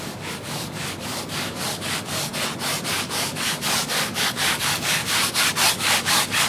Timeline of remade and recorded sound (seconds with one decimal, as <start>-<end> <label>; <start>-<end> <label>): 0.0-2.3 remade; 2.3-2.9 recorded; 2.9-5.0 remade; 5.0-5.7 recorded; 5.7-6.5 remade